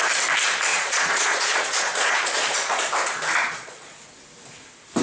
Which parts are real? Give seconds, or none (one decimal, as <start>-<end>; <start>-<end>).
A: 0.0-0.7; 2.8-3.4; 4.1-5.0